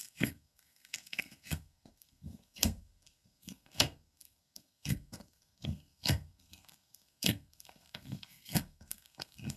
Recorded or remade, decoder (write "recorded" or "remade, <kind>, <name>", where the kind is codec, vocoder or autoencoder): remade, codec, SNAC